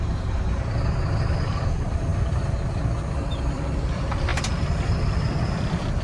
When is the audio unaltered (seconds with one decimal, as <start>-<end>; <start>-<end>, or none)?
2.1-2.7